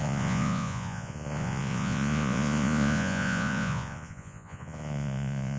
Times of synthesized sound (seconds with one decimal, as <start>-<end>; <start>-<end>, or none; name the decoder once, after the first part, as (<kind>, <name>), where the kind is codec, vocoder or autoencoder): 0.0-5.6 (vocoder, Vocos)